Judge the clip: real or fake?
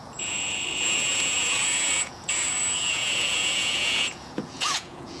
fake